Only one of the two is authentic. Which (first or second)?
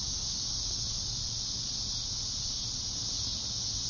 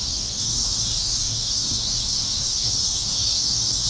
first